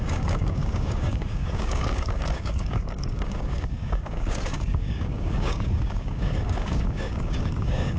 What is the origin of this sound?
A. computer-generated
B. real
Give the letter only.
A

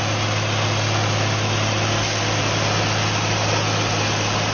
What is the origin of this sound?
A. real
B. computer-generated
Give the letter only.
A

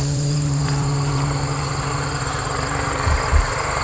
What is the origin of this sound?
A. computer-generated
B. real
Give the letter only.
A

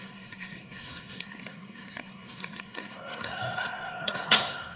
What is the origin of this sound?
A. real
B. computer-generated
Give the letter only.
B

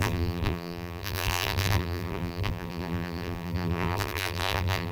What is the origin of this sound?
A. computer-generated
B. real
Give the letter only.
A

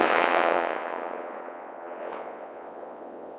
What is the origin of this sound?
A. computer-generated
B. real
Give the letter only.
A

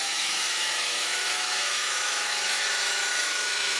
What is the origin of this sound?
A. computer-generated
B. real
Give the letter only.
A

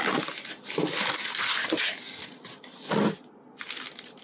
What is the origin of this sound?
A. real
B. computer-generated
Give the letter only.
A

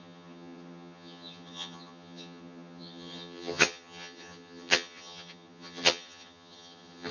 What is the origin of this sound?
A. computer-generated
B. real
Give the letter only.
A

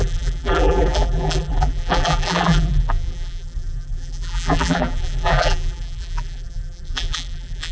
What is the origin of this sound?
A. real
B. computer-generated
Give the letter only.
B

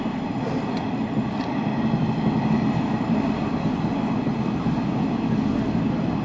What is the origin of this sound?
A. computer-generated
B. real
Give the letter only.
B